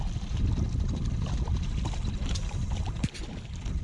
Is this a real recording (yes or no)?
yes